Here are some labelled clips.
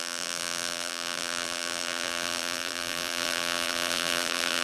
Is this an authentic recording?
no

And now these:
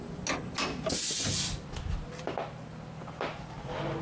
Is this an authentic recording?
yes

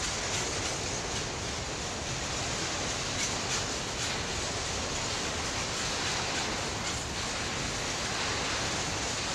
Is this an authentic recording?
yes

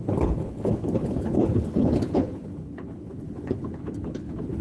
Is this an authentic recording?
no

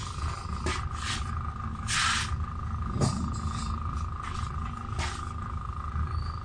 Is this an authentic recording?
yes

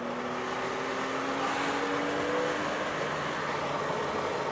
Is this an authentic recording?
yes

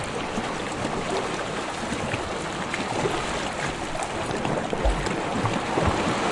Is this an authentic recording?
yes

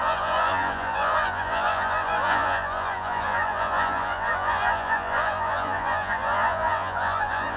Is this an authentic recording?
no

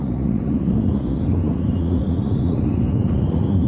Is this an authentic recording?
no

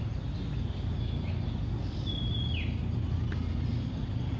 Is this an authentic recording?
yes